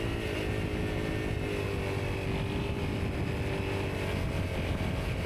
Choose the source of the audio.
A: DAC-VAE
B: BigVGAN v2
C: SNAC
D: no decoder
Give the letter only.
D